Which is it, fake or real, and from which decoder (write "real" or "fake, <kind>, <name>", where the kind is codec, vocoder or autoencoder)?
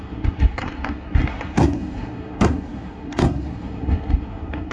fake, codec, SNAC